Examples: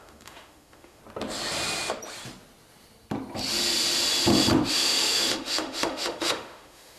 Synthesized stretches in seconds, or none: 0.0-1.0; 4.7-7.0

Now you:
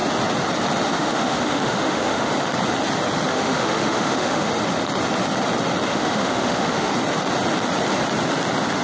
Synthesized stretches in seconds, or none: 0.9-2.3; 3.3-4.5; 5.9-6.9

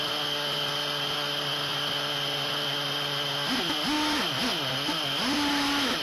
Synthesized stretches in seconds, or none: none

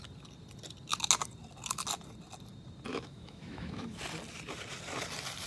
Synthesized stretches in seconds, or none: 2.9-4.0

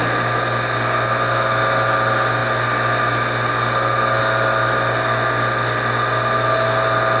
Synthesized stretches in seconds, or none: none

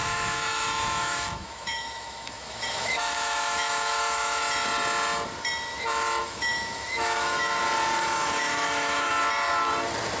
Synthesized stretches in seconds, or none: 0.0-4.4; 6.2-7.6; 8.0-9.1